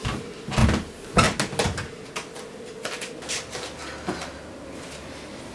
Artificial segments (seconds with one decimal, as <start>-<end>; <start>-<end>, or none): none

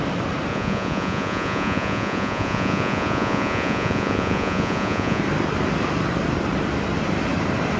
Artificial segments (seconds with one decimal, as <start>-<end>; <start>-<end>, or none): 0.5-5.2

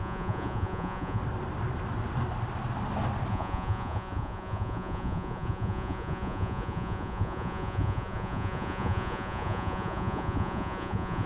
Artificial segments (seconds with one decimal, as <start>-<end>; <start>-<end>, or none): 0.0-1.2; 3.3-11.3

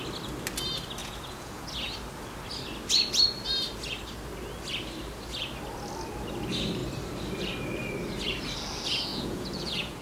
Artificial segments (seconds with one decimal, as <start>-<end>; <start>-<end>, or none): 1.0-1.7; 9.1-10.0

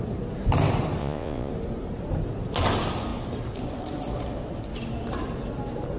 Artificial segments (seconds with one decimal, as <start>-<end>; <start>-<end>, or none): 1.0-1.5

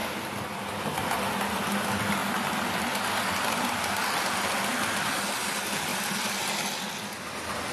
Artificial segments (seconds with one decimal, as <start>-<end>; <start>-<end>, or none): none

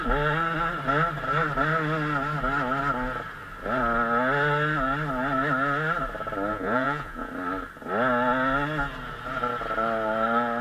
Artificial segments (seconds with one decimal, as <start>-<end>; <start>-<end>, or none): 6.5-7.3